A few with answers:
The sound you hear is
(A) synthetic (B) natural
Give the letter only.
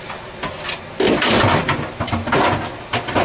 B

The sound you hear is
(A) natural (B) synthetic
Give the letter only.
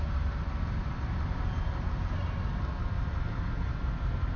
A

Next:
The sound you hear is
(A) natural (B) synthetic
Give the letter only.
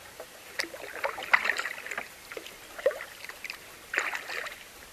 A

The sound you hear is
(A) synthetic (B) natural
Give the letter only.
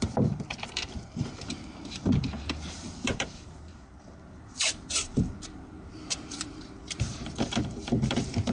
A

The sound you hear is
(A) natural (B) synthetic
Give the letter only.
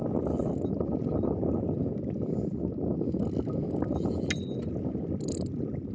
A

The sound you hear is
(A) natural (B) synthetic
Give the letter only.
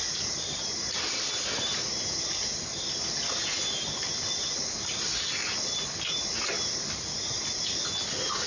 A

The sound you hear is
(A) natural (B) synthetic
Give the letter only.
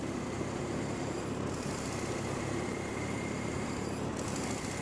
B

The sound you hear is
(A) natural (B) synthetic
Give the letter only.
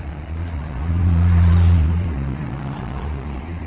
B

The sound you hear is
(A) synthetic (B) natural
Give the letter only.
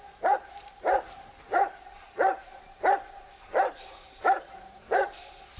A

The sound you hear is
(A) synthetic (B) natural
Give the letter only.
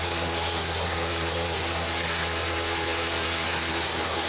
A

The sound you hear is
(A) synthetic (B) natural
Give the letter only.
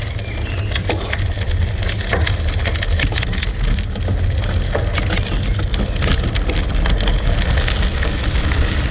B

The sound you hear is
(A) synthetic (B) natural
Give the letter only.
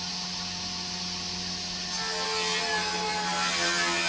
B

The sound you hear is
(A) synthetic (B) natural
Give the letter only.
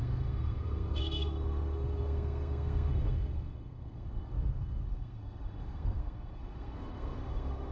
A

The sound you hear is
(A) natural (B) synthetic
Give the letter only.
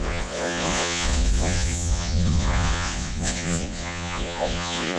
B